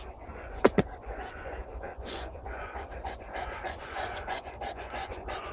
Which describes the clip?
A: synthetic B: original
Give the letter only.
A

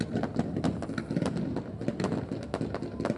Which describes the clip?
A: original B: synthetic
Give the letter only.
A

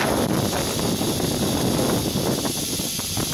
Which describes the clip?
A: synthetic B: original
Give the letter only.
B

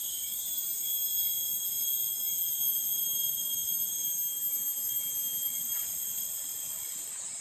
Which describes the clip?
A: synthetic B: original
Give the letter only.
B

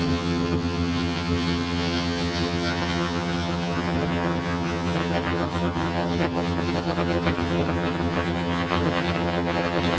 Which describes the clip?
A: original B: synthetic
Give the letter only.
B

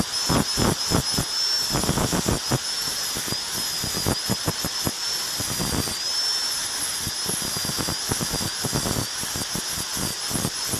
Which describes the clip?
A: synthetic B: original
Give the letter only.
B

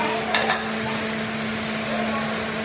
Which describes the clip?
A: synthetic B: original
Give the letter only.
B